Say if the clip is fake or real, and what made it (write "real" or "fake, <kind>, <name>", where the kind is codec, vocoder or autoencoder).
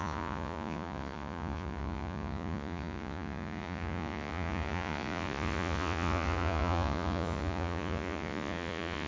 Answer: fake, vocoder, Vocos